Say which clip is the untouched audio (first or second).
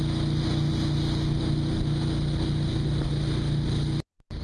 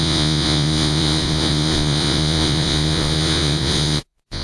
first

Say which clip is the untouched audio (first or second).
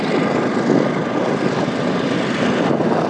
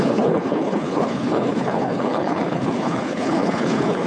first